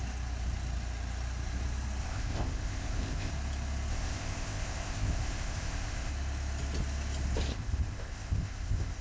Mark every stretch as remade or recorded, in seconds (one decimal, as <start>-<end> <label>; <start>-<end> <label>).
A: 0.0-2.0 recorded; 2.0-3.3 remade; 3.3-3.9 recorded; 3.9-6.1 remade; 6.1-7.5 recorded; 7.5-9.0 remade